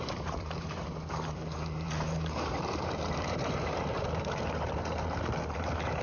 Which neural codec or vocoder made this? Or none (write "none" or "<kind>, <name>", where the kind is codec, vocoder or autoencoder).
vocoder, BigVGAN v2